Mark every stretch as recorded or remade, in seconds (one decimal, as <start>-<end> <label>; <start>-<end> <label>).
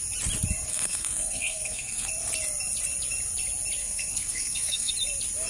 0.0-0.7 recorded; 0.7-2.1 remade; 2.1-3.8 recorded; 3.8-4.9 remade; 4.9-5.5 recorded